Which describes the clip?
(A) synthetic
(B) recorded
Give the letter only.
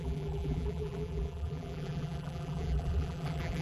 A